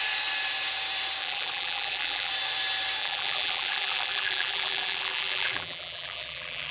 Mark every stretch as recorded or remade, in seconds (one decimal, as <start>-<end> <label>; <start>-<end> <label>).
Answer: 0.0-1.2 recorded; 1.2-2.3 remade; 2.3-3.0 recorded; 3.0-6.7 remade